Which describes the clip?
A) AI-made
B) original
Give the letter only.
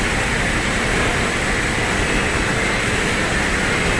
B